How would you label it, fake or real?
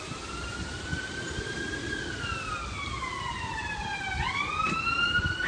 real